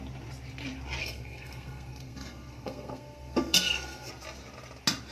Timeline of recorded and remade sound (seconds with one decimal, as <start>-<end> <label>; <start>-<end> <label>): 0.0-1.0 recorded; 1.0-4.1 remade; 4.1-5.1 recorded